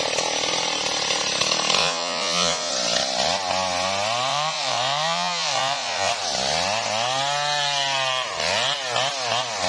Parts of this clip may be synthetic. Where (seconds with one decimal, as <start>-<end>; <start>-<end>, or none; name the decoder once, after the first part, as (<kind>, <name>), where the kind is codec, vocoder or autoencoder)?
1.8-2.7 (vocoder, Vocos); 4.3-6.1